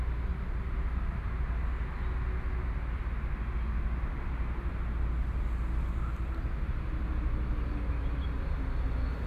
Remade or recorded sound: recorded